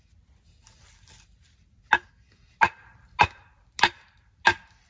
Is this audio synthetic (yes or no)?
no